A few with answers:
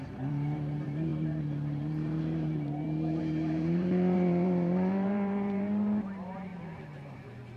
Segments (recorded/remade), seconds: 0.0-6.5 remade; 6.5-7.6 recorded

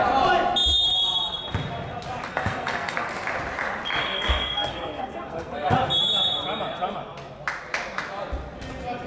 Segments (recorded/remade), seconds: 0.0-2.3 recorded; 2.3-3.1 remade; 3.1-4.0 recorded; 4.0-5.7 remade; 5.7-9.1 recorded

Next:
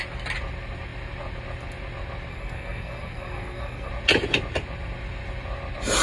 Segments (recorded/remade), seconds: 0.0-2.3 recorded; 2.3-3.9 remade; 3.9-6.0 recorded

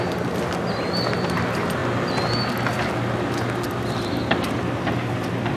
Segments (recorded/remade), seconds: 0.0-5.6 recorded

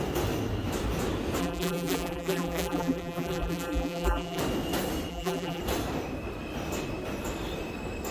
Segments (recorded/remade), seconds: 0.0-1.4 recorded; 1.4-4.4 remade; 4.4-5.1 recorded; 5.1-5.6 remade; 5.6-8.1 recorded

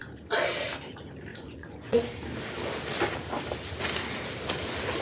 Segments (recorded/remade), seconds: 0.0-1.3 recorded; 1.3-2.0 remade; 2.0-5.0 recorded